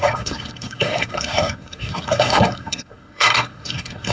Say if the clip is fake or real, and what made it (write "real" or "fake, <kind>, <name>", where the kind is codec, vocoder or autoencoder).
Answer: fake, codec, SNAC